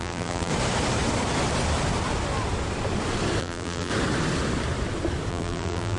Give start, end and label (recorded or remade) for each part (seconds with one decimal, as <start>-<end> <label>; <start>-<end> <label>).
0.0-0.5 remade; 0.5-3.4 recorded; 3.4-3.9 remade; 3.9-5.3 recorded; 5.3-6.0 remade